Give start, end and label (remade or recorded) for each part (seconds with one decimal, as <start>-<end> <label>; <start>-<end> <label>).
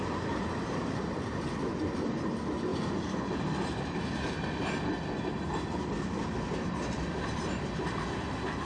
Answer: 0.0-8.7 recorded